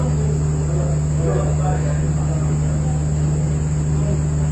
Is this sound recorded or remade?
recorded